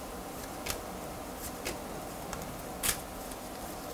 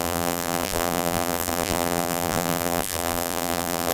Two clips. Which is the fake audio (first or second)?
second